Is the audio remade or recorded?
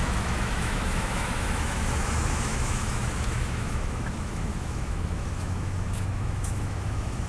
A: remade